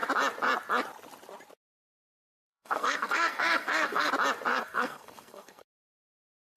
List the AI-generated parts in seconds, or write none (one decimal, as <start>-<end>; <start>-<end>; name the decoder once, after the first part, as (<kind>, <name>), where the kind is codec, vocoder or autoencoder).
2.2-4.1 (codec, SNAC); 4.5-5.8